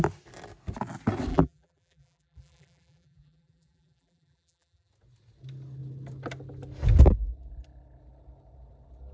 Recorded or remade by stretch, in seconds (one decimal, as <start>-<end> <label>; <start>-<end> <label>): 0.0-1.3 recorded; 1.3-4.9 remade; 4.9-9.1 recorded